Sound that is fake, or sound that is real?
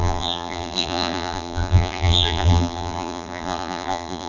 fake